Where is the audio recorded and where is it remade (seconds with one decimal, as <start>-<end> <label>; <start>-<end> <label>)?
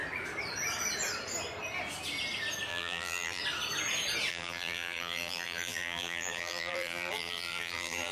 0.0-2.7 recorded; 2.7-3.4 remade; 3.4-4.3 recorded; 4.3-8.1 remade